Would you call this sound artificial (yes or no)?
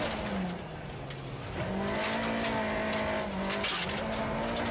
no